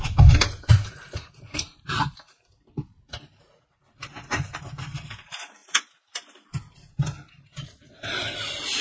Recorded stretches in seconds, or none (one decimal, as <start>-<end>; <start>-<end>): 5.6-7.3